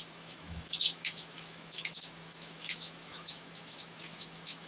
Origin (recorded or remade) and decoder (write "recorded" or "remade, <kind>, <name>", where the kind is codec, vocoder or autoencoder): remade, autoencoder, DAC-VAE